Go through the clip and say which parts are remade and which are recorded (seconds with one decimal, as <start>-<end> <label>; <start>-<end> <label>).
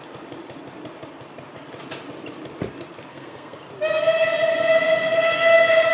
0.0-3.1 recorded; 3.1-3.6 remade; 3.6-5.9 recorded